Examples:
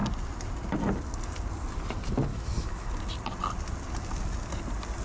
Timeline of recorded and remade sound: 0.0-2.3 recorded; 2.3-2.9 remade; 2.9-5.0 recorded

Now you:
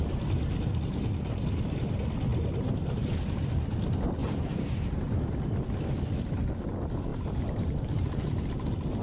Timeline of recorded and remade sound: 0.0-2.3 recorded; 2.3-3.1 remade; 3.1-4.2 recorded; 4.2-5.1 remade; 5.1-7.1 recorded; 7.1-8.3 remade; 8.3-9.0 recorded

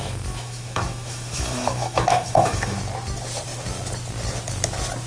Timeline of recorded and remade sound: 0.0-2.8 remade; 2.8-5.1 recorded

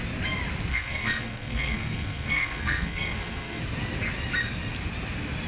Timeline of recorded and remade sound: 0.0-0.7 recorded; 0.7-3.6 remade; 3.6-5.5 recorded

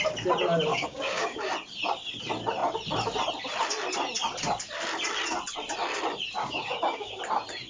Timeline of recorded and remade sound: 0.0-0.7 recorded; 0.7-1.4 remade; 1.4-6.4 recorded; 6.4-7.2 remade; 7.2-7.7 recorded

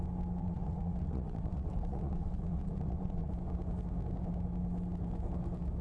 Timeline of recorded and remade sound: 0.0-0.4 recorded; 0.4-3.3 remade; 3.3-5.8 recorded